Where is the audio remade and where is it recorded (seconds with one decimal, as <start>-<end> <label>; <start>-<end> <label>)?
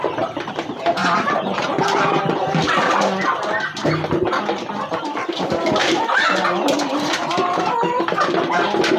0.0-1.0 recorded; 1.0-2.2 remade; 2.2-5.8 recorded; 5.8-7.7 remade; 7.7-9.0 recorded